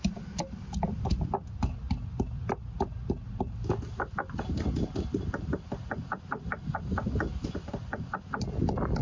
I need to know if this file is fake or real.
real